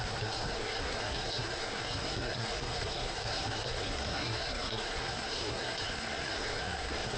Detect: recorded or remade remade